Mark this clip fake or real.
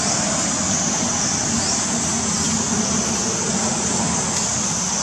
real